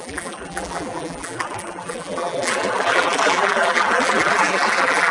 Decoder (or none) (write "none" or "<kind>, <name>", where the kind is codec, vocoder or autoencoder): vocoder, BigVGAN v2